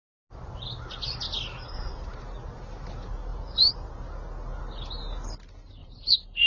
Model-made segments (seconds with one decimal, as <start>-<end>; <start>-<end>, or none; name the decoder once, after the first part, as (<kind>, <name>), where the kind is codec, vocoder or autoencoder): 3.3-3.9 (vocoder, BigVGAN v2); 5.8-6.5